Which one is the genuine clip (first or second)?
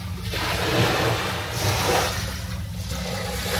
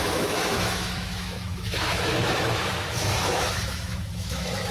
first